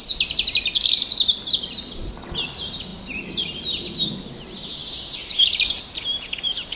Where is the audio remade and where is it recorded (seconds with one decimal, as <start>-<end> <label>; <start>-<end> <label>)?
0.0-6.8 recorded